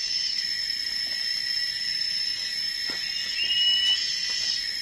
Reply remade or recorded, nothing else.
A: recorded